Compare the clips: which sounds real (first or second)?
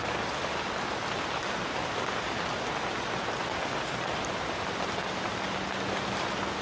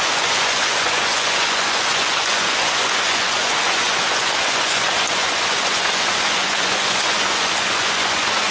first